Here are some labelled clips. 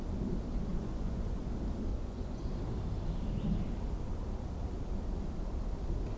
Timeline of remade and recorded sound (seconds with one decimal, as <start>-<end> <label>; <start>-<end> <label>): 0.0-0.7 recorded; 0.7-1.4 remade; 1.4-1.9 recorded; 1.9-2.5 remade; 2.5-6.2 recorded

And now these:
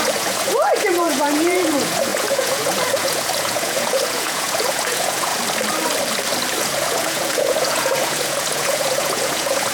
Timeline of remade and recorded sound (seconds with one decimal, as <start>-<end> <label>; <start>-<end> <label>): 0.0-5.3 remade; 5.3-6.6 recorded; 6.6-9.7 remade

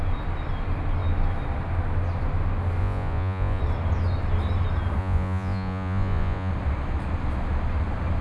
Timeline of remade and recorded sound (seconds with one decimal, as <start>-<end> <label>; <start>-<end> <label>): 0.0-2.8 recorded; 2.8-3.6 remade; 3.6-5.0 recorded; 5.0-6.5 remade; 6.5-8.2 recorded

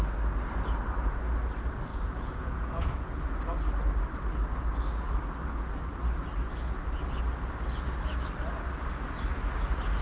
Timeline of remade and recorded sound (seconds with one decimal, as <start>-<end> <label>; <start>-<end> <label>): 0.0-1.9 recorded; 1.9-3.2 remade; 3.2-10.0 recorded

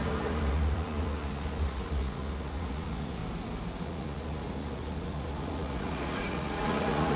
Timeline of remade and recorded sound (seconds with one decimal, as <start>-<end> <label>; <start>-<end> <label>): 0.0-3.2 remade; 3.2-3.8 recorded; 3.8-7.2 remade

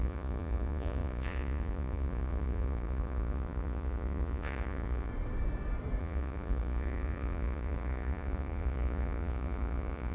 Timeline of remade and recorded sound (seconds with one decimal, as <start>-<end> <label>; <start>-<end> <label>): 0.0-5.1 remade; 5.1-6.0 recorded; 6.0-10.1 remade